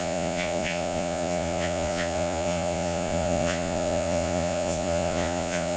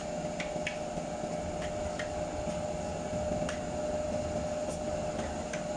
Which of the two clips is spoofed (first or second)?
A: first